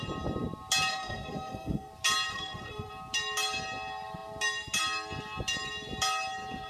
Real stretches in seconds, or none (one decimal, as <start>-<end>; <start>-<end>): 0.0-0.9; 1.9-2.3; 2.9-6.7